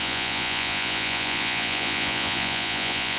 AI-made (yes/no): yes